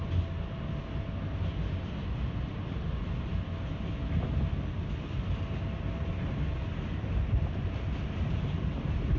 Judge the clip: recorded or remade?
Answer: recorded